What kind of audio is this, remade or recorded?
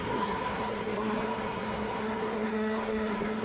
remade